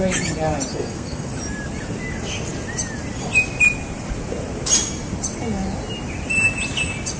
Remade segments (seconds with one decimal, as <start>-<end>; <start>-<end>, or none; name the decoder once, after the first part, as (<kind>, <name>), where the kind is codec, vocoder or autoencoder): 0.7-1.3 (codec, SNAC)